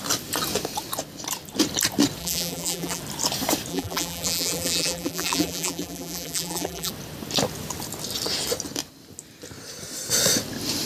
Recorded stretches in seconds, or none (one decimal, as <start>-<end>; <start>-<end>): 0.0-2.2; 3.0-3.7; 6.9-10.9